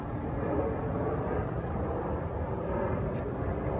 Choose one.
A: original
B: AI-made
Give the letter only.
A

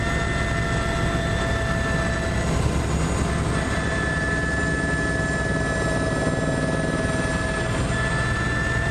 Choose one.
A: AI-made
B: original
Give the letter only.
B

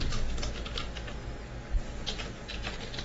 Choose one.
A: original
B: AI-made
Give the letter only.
A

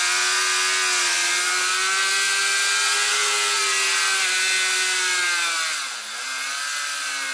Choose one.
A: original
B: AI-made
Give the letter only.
A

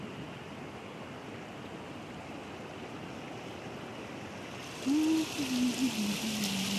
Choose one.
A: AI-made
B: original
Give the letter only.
B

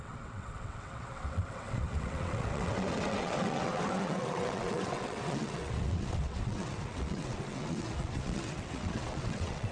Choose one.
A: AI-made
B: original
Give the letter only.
A